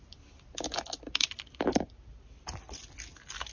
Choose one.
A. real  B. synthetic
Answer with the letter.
A